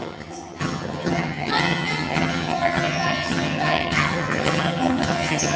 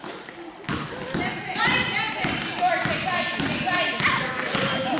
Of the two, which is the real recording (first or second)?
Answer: second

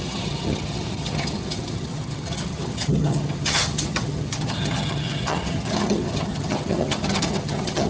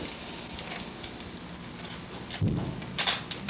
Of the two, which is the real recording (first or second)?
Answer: second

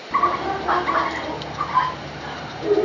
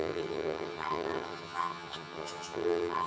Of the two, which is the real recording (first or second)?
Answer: first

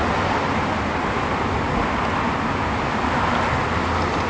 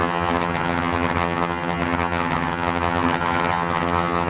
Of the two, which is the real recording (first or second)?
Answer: first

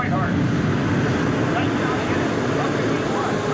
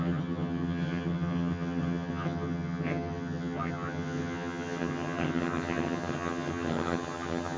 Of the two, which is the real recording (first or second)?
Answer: first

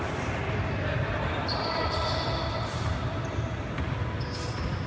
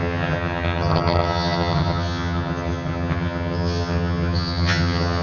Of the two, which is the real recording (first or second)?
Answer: first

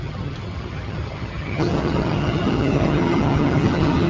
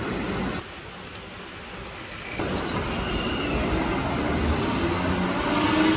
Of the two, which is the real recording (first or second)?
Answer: second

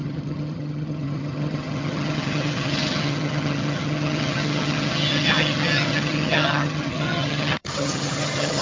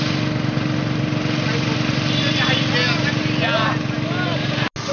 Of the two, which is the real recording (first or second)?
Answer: second